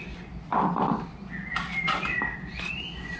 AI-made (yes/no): yes